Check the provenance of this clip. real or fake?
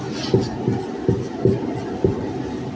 real